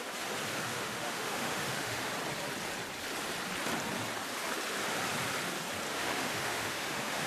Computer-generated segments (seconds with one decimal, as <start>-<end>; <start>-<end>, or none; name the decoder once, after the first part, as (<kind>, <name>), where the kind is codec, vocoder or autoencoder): 0.7-2.1 (autoencoder, DAC-VAE); 5.9-7.3